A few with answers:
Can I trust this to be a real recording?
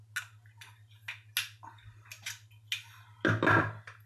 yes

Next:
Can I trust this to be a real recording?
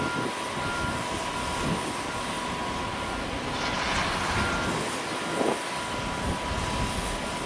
yes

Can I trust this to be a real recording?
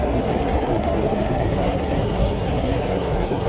no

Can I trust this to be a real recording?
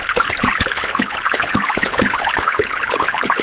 no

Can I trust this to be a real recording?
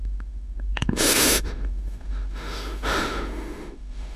no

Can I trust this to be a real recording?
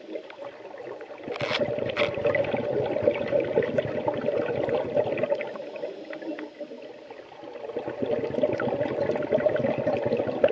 yes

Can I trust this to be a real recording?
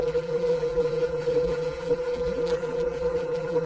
no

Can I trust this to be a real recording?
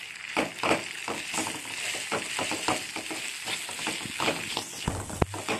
yes